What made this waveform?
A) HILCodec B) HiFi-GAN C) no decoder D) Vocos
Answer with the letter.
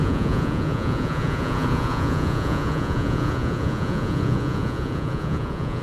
D